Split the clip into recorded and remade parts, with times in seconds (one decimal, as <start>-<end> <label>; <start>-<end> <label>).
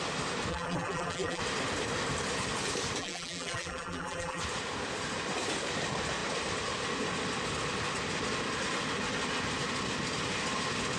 0.0-0.5 recorded; 0.5-1.4 remade; 1.4-3.0 recorded; 3.0-4.4 remade; 4.4-11.0 recorded